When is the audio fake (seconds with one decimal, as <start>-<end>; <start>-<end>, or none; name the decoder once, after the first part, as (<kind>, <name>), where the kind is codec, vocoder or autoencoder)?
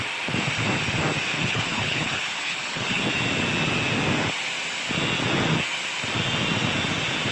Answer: 1.3-3.0 (codec, HILCodec)